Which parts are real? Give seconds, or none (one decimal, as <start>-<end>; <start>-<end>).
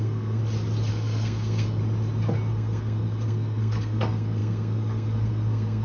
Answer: 0.4-0.9; 1.8-2.5